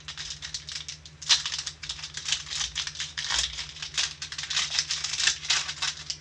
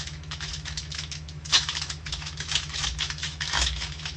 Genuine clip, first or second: first